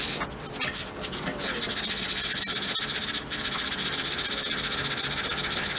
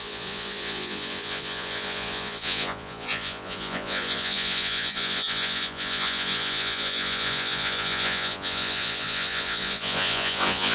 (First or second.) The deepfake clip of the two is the second